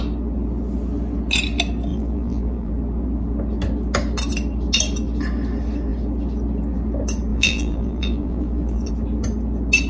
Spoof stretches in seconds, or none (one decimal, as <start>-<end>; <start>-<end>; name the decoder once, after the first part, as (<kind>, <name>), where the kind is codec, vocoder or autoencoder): 1.9-2.7 (vocoder, BigVGAN v2); 7.3-8.9